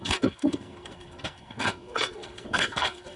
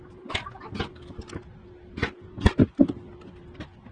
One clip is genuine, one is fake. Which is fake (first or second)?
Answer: first